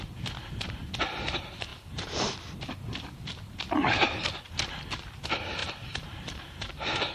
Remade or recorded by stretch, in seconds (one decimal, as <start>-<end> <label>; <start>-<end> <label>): 0.0-1.7 recorded; 1.7-2.3 remade; 2.3-5.6 recorded; 5.6-7.1 remade